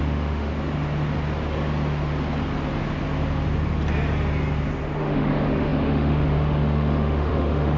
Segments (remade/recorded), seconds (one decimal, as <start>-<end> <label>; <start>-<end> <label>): 0.0-0.5 remade; 0.5-5.0 recorded; 5.0-7.8 remade